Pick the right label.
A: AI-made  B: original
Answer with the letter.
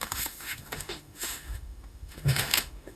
A